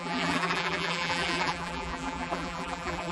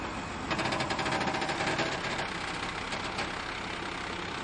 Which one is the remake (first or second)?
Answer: first